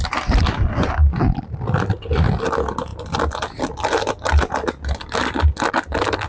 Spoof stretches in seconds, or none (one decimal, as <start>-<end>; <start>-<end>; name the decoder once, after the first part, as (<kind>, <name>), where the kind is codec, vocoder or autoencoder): none